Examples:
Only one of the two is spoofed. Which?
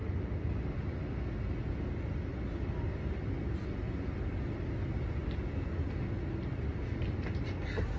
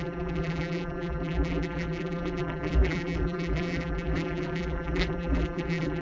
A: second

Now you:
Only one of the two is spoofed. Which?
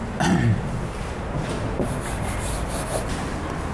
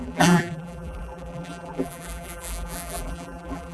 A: second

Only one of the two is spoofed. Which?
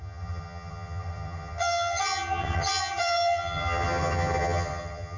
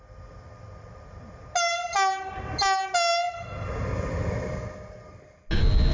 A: first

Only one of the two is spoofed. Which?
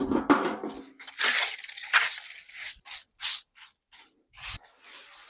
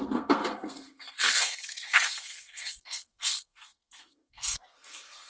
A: second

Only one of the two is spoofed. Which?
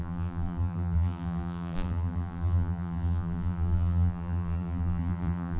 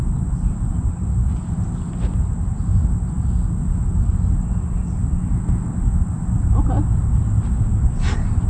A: first